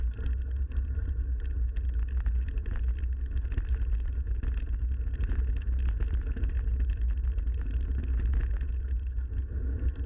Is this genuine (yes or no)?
yes